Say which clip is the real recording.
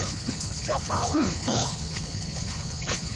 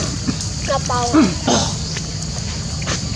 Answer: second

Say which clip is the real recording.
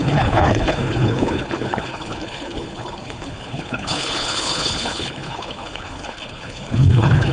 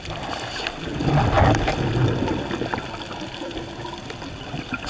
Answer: second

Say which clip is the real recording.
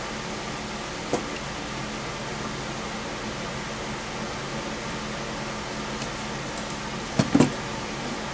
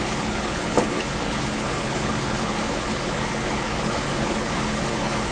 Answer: first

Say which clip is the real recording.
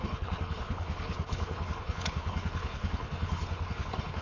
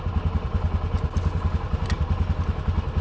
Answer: second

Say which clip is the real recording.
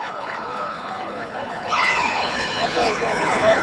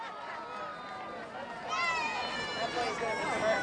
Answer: second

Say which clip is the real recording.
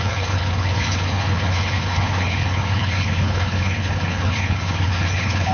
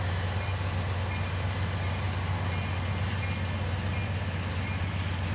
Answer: second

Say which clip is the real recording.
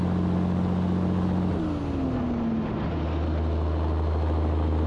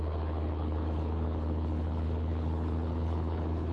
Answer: first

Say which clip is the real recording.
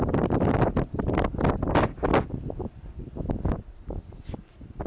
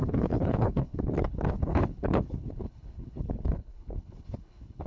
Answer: first